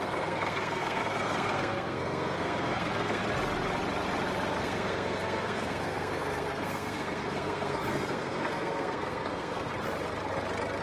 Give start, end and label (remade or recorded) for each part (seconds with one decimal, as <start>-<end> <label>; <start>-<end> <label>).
0.0-3.2 remade; 3.2-4.6 recorded; 4.6-9.7 remade; 9.7-10.8 recorded